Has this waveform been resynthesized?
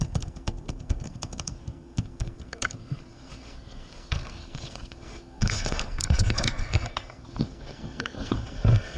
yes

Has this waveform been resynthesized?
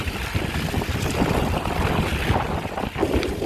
no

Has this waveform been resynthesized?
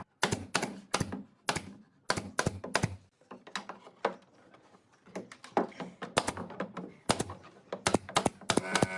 no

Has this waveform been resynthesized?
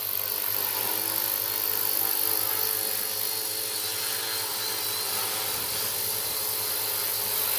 no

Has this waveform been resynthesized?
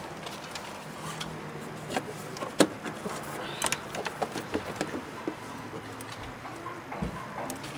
no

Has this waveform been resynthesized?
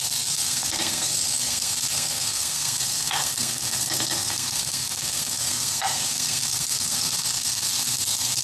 yes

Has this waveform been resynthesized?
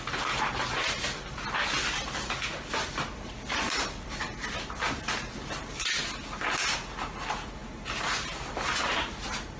no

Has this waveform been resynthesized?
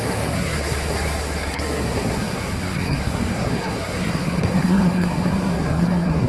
yes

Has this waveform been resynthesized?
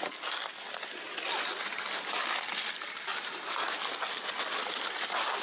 no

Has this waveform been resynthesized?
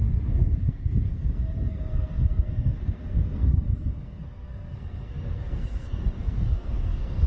yes